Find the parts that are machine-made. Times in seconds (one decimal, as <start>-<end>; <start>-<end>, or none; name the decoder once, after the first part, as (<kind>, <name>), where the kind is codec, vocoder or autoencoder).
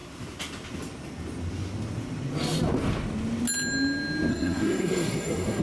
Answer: 4.3-5.6 (codec, SNAC)